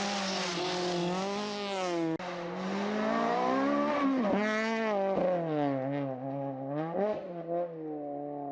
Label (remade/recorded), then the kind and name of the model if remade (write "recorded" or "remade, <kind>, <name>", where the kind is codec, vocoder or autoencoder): recorded